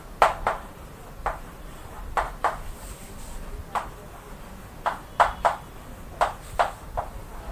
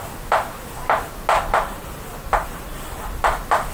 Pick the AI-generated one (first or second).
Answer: first